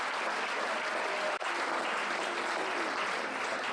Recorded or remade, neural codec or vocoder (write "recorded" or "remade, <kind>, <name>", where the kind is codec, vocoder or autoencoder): recorded